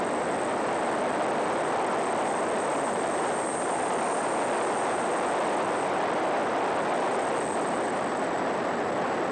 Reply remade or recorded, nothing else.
recorded